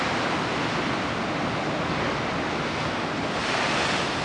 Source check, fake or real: real